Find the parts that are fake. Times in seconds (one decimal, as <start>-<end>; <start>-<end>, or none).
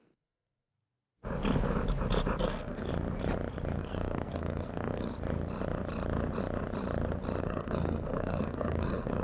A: 0.0-0.7; 2.4-2.9; 3.8-5.1; 7.4-9.2